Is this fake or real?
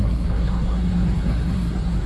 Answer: fake